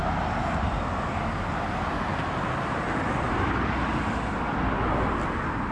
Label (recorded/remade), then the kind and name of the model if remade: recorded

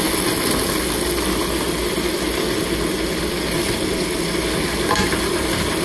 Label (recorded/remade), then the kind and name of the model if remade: recorded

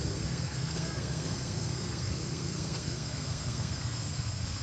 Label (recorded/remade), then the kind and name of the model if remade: remade, codec, SNAC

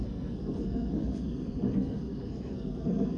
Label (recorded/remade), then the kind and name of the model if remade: remade, codec, SNAC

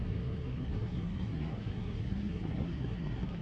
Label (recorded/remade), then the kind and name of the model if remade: remade, codec, SNAC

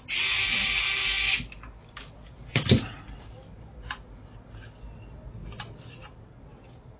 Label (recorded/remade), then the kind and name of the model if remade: recorded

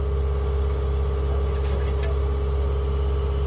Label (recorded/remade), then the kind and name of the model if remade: recorded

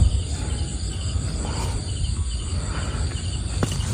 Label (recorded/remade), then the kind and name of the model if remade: recorded